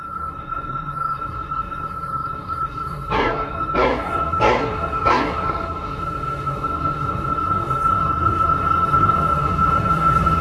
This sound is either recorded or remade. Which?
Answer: remade